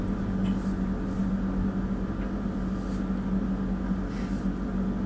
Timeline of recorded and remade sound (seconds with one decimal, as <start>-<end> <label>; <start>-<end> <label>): 0.0-5.1 recorded